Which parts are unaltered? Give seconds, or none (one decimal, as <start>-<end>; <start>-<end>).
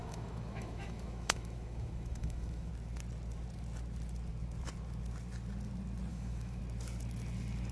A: 2.7-6.1; 6.6-7.7